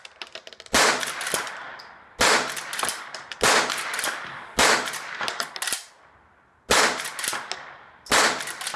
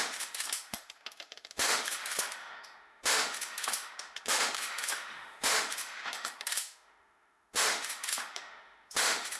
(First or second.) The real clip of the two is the first